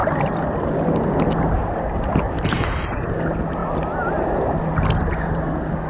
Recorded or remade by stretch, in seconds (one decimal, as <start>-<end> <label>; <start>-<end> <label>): 0.0-3.6 recorded; 3.6-4.6 remade; 4.6-5.9 recorded